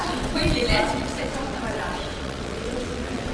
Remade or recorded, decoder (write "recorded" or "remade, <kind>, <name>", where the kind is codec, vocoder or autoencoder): remade, vocoder, WaveNeXt